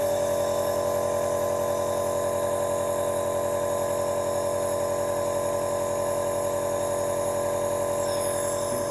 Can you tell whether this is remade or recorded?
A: recorded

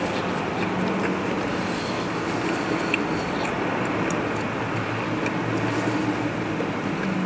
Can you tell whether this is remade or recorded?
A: recorded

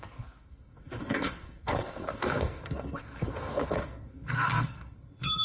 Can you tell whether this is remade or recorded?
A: remade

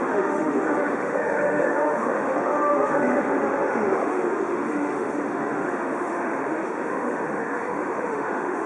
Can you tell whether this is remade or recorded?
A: remade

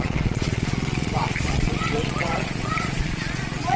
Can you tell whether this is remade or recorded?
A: remade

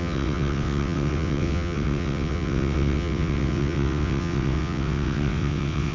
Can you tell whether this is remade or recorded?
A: remade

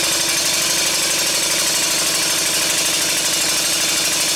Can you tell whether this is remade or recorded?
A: recorded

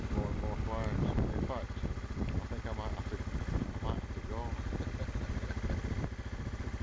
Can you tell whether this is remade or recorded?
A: recorded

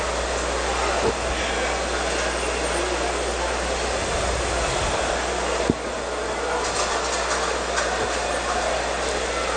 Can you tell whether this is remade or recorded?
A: recorded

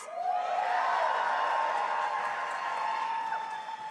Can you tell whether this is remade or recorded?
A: remade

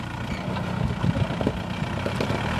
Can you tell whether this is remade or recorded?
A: recorded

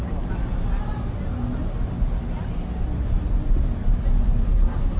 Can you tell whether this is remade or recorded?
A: recorded